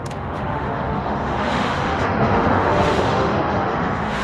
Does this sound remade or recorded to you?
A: remade